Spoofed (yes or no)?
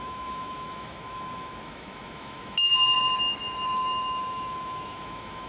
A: yes